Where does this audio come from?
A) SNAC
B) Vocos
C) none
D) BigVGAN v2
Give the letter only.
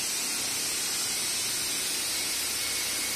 C